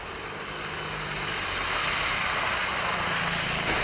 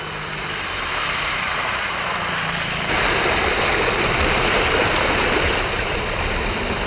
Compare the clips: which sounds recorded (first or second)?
first